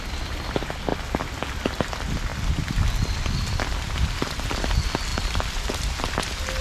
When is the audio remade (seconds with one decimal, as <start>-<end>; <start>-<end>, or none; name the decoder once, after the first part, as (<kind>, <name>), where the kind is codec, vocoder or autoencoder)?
0.9-1.5 (vocoder, BigVGAN v2); 2.3-4.3